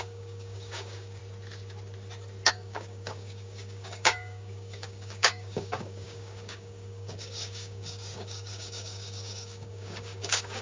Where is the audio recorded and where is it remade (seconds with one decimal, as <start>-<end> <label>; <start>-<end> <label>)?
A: 0.0-1.2 remade; 1.2-2.5 recorded; 2.5-10.6 remade